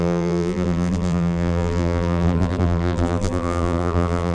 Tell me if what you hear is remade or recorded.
remade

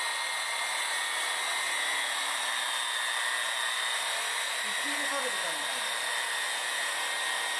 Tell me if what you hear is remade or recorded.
recorded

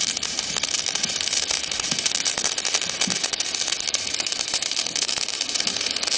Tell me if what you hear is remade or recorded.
remade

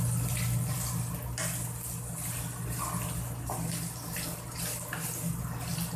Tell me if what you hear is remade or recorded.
recorded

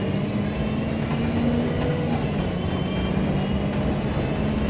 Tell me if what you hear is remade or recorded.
recorded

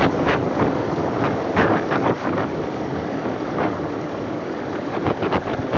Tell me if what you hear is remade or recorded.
remade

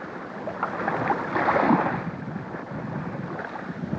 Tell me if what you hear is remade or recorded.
recorded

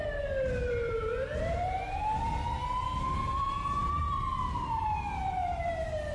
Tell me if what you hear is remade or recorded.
remade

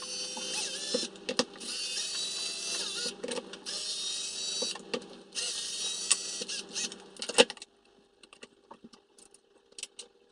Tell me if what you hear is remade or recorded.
recorded